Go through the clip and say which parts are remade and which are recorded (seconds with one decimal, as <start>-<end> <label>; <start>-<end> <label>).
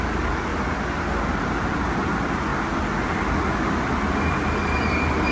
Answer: 0.0-0.5 remade; 0.5-1.3 recorded; 1.3-2.5 remade; 2.5-4.3 recorded; 4.3-5.3 remade